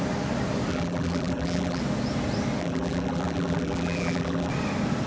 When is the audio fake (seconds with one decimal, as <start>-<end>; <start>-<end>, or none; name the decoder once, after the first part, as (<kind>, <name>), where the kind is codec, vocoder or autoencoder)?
0.7-1.8 (vocoder, BigVGAN v2); 2.6-4.5